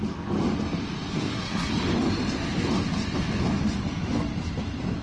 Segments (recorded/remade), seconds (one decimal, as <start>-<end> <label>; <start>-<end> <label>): 0.0-1.1 recorded; 1.1-1.7 remade; 1.7-5.0 recorded